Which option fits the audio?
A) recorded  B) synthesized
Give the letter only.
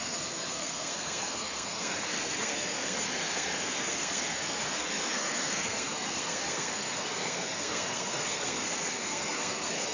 B